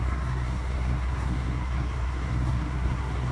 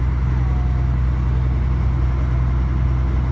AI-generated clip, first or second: first